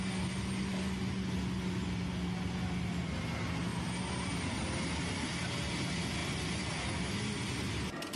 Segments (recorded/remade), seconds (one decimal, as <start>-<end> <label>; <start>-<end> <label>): 0.0-8.2 recorded

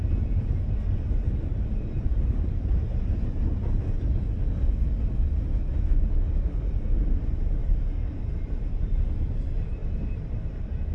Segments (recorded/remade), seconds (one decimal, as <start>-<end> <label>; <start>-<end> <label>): 0.0-2.1 recorded; 2.1-2.8 remade; 2.8-7.6 recorded; 7.6-9.4 remade; 9.4-10.9 recorded

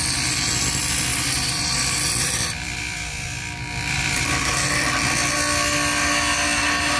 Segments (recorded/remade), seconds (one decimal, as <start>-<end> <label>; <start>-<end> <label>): 0.0-1.1 recorded; 1.1-4.8 remade; 4.8-7.0 recorded